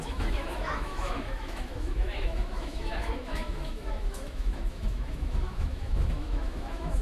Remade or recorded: remade